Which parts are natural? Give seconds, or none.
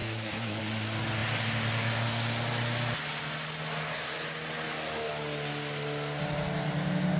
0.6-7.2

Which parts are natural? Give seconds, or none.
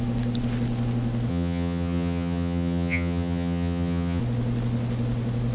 0.0-1.3; 4.2-5.5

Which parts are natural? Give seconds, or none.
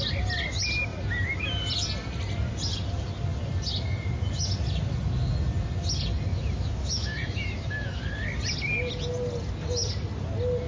0.0-6.3; 8.0-10.7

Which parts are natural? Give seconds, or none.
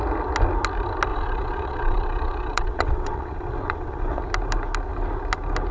0.0-1.1; 4.2-5.7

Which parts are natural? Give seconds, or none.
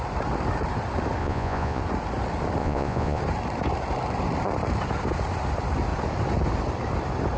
0.0-1.2; 1.8-2.6; 3.2-7.4